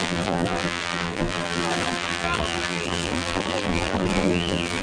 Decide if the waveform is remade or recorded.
remade